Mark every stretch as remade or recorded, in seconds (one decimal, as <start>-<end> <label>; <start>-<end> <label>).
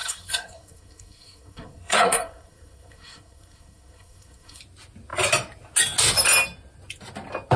0.0-4.6 remade; 4.6-7.6 recorded